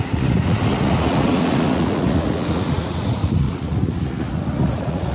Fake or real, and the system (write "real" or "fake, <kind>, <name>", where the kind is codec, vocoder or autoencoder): fake, vocoder, Vocos